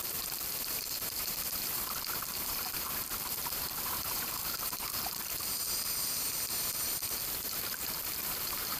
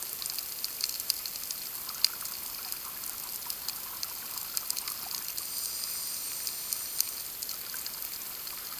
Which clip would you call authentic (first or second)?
second